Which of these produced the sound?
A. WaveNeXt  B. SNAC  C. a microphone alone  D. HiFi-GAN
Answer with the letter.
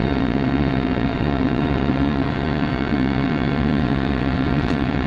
A